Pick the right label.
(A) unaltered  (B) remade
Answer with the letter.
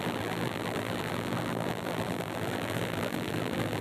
B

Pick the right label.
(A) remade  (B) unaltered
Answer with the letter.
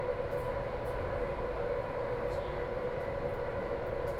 B